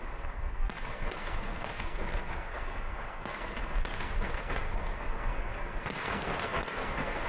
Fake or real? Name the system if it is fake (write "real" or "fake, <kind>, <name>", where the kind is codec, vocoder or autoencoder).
fake, codec, SNAC